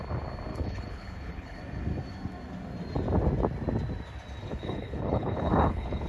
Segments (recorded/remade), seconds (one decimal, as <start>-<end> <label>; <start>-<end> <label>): 0.0-0.5 recorded; 0.5-1.6 remade; 1.6-4.4 recorded; 4.4-6.1 remade